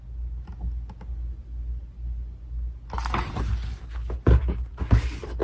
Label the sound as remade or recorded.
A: recorded